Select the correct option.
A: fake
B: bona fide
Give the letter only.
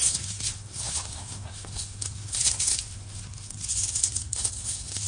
A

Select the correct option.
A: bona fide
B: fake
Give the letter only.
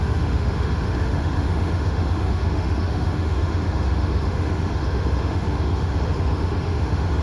B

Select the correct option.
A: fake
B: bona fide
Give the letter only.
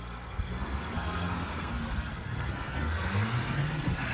A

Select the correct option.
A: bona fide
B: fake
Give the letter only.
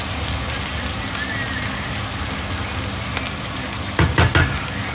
A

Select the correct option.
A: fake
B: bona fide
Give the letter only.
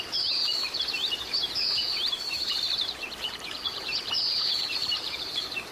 A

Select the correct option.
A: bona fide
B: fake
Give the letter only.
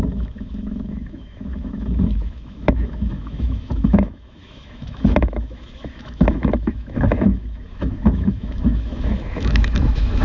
B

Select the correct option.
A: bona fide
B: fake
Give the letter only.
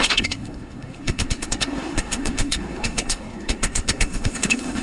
B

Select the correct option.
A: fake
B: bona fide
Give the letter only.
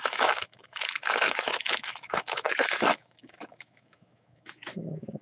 A